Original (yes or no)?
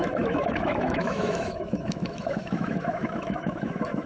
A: no